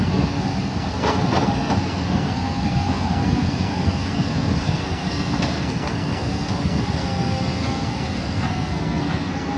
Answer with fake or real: fake